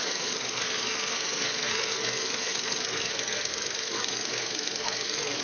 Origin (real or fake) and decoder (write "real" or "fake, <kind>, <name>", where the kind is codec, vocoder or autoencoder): fake, codec, SNAC